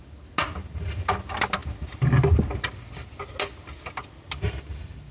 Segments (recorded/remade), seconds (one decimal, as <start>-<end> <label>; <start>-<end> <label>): 0.0-5.1 recorded